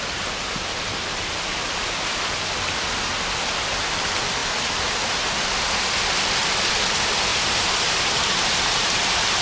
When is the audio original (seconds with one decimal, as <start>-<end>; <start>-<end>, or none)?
0.0-7.3